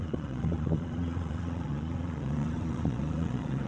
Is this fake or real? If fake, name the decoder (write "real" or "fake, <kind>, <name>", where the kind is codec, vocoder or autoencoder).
fake, vocoder, Vocos